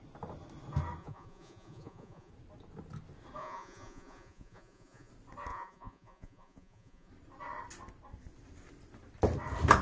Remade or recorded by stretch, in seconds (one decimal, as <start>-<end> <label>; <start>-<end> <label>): 0.0-1.0 recorded; 1.0-2.3 remade; 2.3-3.4 recorded; 3.4-5.1 remade; 5.1-5.5 recorded; 5.5-7.1 remade; 7.1-9.8 recorded